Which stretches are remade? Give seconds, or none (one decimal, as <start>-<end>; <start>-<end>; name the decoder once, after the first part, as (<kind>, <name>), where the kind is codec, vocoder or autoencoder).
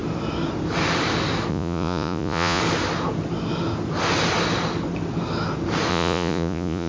1.5-2.6 (vocoder, Vocos); 5.9-6.9